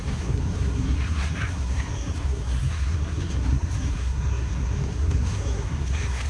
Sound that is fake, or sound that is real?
fake